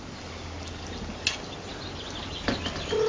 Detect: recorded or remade recorded